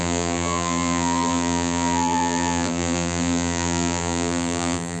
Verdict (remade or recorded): remade